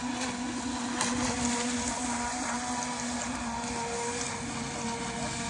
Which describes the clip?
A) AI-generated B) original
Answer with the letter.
B